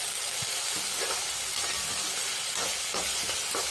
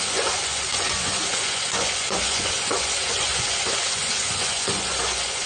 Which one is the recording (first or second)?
first